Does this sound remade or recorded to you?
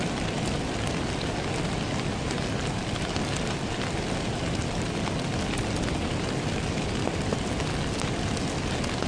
recorded